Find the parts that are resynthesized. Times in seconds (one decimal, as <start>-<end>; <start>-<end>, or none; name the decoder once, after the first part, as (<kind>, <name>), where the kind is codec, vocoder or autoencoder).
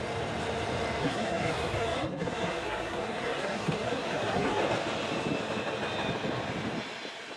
1.0-4.6 (codec, SNAC)